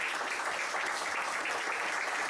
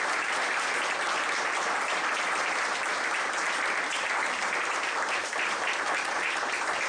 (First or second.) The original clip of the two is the first